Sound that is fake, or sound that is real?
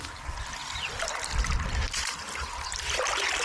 real